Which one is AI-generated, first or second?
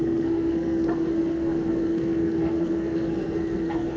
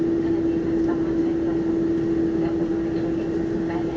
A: first